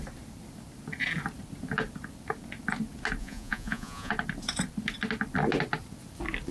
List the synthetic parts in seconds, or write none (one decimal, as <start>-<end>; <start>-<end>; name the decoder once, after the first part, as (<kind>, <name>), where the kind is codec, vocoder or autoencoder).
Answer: 3.2-4.1 (vocoder, Vocos)